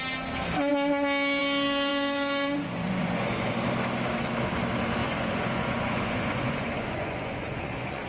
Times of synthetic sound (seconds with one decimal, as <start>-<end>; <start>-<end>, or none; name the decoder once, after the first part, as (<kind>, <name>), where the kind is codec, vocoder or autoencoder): 1.9-3.5 (vocoder, Vocos); 5.0-8.1